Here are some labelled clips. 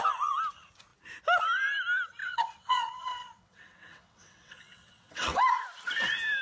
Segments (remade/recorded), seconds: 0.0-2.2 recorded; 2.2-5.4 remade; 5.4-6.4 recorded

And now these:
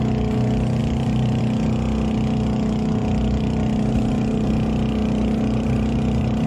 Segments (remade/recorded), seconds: 0.0-0.8 recorded; 0.8-1.4 remade; 1.4-3.0 recorded; 3.0-4.5 remade; 4.5-5.0 recorded; 5.0-6.5 remade